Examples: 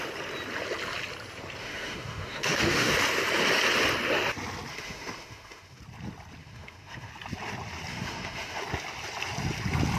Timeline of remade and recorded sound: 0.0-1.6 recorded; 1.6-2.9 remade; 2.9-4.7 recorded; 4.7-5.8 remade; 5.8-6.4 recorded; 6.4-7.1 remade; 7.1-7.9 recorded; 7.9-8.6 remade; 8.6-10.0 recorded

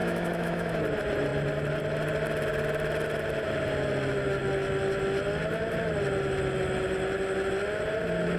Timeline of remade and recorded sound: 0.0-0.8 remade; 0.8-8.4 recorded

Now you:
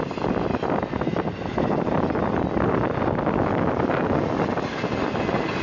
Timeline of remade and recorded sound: 0.0-5.6 recorded

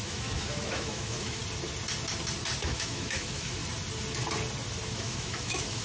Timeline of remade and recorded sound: 0.0-1.4 remade; 1.4-2.6 recorded; 2.6-3.6 remade; 3.6-5.0 recorded; 5.0-5.8 remade

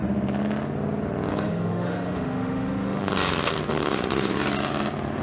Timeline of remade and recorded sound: 0.0-1.3 recorded; 1.3-3.1 remade; 3.1-3.7 recorded; 3.7-4.3 remade; 4.3-5.2 recorded

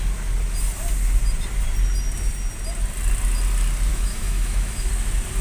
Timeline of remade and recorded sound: 0.0-3.9 recorded; 3.9-4.9 remade; 4.9-5.4 recorded